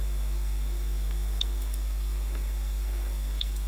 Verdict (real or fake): fake